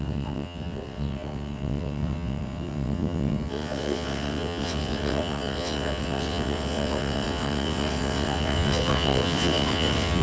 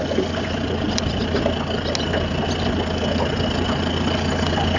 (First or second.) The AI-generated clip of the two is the first